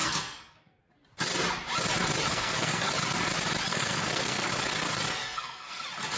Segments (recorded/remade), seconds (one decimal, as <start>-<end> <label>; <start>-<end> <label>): 0.0-0.8 remade; 0.8-2.3 recorded; 2.3-2.9 remade; 2.9-3.7 recorded; 3.7-4.5 remade; 4.5-5.2 recorded; 5.2-5.8 remade; 5.8-6.2 recorded